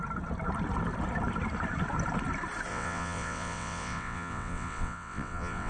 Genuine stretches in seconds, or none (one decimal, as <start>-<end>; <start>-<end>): 0.0-2.7